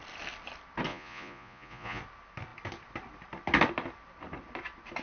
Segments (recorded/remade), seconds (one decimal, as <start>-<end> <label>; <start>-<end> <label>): 0.0-0.9 recorded; 0.9-2.0 remade; 2.0-5.0 recorded